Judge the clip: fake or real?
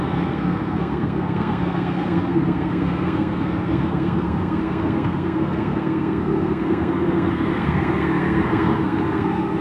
fake